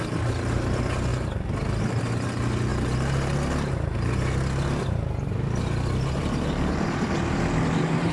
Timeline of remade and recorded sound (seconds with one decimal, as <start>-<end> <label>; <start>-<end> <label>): 0.0-8.1 recorded